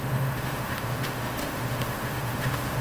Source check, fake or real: fake